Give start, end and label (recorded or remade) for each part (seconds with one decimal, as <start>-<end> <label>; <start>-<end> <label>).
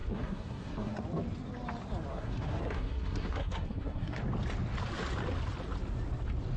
0.0-1.0 remade; 1.0-2.1 recorded; 2.1-4.2 remade; 4.2-6.6 recorded